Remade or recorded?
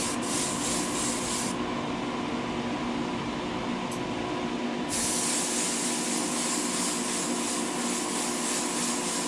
recorded